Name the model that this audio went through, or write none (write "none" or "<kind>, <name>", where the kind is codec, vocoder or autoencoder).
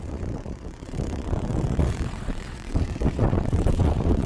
vocoder, WaveNeXt